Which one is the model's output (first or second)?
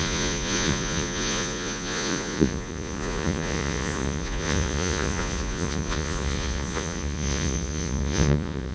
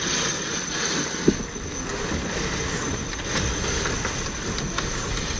first